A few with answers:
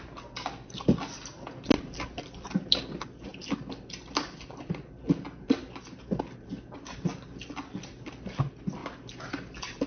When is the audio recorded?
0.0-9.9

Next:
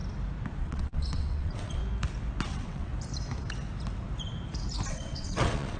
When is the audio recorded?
0.0-0.6; 1.8-2.5; 2.9-4.9

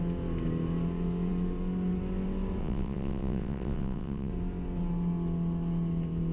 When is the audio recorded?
0.0-2.6; 4.3-6.3

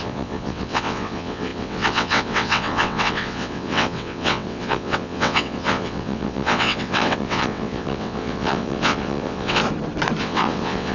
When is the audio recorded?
9.6-10.2

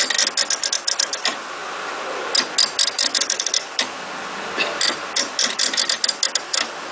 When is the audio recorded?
0.0-6.9

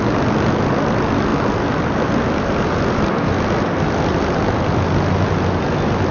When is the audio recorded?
0.0-6.1

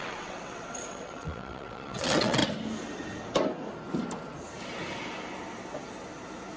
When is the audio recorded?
2.4-6.6

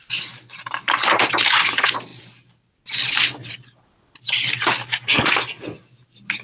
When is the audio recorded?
0.0-6.4